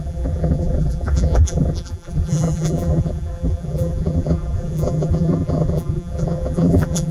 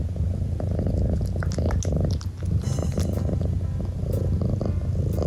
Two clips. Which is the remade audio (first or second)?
first